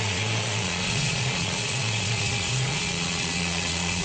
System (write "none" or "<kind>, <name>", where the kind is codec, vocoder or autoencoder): vocoder, Vocos